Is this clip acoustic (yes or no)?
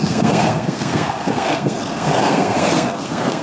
no